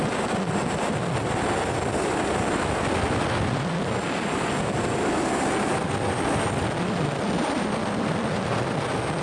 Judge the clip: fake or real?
real